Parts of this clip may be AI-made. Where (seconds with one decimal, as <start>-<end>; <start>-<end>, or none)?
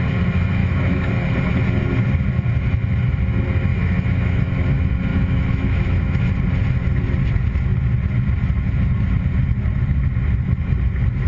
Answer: 0.6-1.1; 3.7-4.5; 5.1-6.3